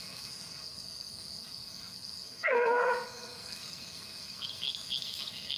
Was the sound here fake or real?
fake